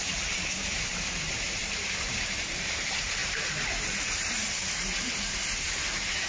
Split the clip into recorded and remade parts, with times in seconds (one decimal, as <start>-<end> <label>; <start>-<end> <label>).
0.0-6.3 remade